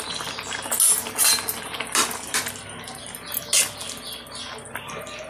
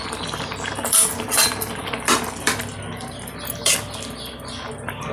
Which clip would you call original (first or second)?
first